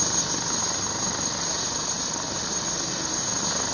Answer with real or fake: real